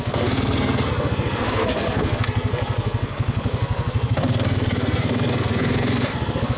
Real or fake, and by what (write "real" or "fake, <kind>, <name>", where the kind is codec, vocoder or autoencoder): fake, codec, SNAC